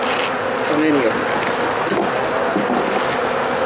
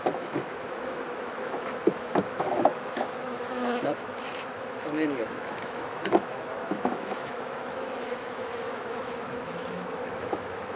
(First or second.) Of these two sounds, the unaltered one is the first